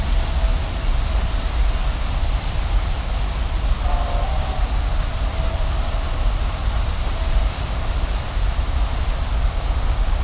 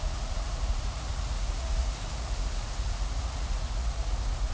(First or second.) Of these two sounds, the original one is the first